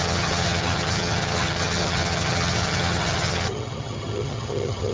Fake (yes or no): yes